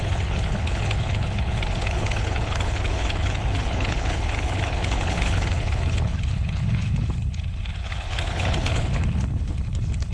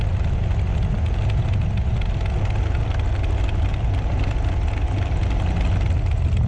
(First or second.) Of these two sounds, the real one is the second